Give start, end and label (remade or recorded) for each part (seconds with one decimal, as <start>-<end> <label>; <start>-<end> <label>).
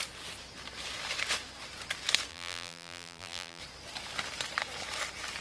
0.0-2.3 recorded; 2.3-3.6 remade; 3.6-5.4 recorded